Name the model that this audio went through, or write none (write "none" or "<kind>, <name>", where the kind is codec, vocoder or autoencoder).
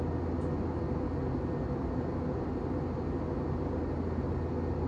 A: none